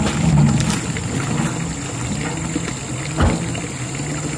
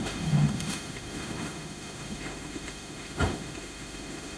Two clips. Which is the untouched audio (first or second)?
first